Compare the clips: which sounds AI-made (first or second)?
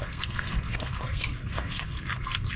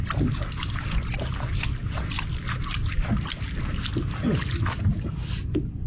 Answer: first